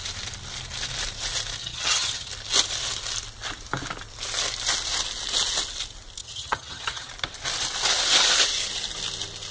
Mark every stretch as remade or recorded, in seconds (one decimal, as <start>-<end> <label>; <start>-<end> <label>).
0.0-1.6 recorded; 1.6-2.3 remade; 2.3-6.2 recorded; 6.2-7.1 remade; 7.1-9.5 recorded